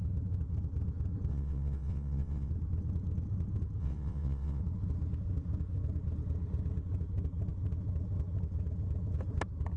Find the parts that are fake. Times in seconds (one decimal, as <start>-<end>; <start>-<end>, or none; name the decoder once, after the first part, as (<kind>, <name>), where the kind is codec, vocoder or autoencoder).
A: 1.3-2.5 (vocoder, WaveNeXt); 3.8-4.6